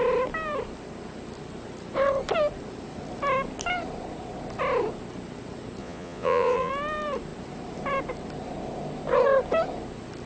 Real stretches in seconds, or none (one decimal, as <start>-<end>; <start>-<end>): 0.0-5.8; 6.7-10.3